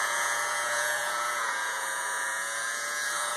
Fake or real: fake